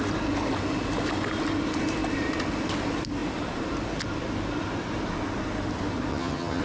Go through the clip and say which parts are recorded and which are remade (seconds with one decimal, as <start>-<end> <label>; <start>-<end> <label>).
0.0-6.1 recorded; 6.1-6.6 remade